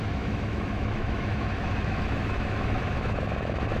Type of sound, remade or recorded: remade